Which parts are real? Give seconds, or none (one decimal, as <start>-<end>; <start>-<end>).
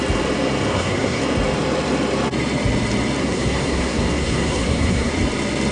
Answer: 0.0-0.7; 1.2-3.2; 5.1-5.7